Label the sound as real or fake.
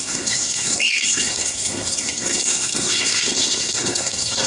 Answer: fake